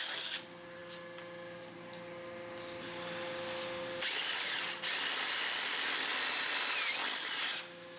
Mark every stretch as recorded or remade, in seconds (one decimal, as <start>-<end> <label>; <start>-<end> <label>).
0.0-8.0 recorded